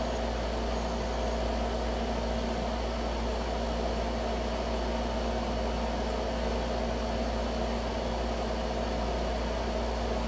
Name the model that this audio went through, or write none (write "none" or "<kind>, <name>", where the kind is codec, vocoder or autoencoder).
none